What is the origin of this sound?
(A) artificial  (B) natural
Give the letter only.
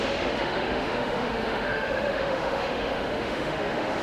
A